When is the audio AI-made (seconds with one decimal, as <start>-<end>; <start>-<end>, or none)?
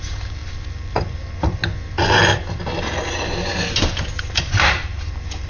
0.0-1.6; 4.2-5.5